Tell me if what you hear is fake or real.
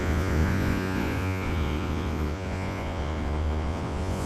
fake